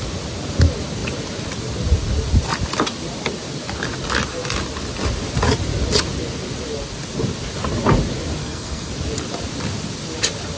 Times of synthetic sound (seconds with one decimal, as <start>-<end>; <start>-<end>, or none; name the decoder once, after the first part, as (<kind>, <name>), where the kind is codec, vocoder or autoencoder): 8.4-8.9 (codec, SNAC)